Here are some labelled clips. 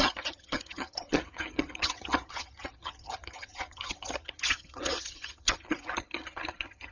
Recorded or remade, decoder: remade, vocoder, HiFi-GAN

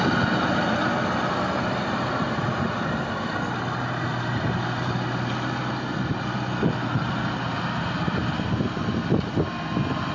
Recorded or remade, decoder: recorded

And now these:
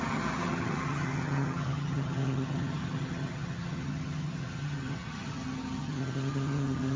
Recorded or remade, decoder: remade, vocoder, HiFi-GAN